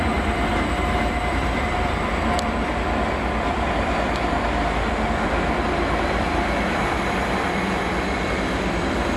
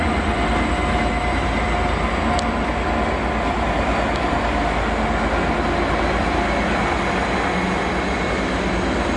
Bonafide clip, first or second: second